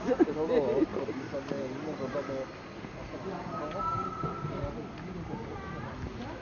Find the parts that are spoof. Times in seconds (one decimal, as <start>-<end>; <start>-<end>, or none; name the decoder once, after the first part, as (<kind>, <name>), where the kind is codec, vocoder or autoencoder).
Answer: none

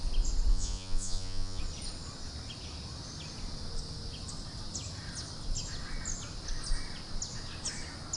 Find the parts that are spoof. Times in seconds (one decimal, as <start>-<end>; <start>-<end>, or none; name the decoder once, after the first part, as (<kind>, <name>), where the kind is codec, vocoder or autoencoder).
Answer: 0.5-1.6 (vocoder, Vocos)